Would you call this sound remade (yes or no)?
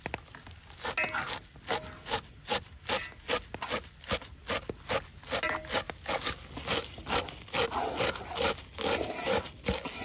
no